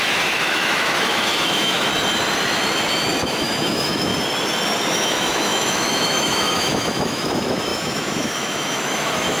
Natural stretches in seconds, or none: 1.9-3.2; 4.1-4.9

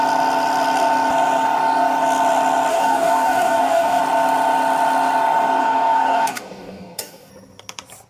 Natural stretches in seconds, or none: 0.0-2.7; 4.0-5.6; 7.3-8.1

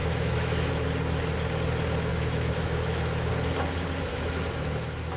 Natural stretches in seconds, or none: 0.7-2.1; 3.3-4.1